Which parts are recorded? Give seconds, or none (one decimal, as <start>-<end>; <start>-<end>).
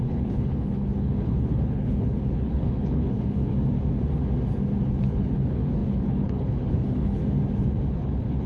3.5-4.9; 7.2-7.9